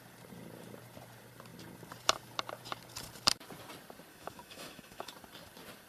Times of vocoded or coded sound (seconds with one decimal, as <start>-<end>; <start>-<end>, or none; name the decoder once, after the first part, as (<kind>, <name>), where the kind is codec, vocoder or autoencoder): 4.1-5.1 (autoencoder, DAC-VAE)